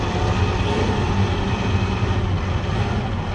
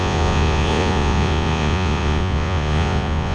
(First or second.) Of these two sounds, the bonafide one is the first